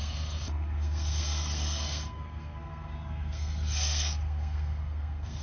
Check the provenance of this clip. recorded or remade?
remade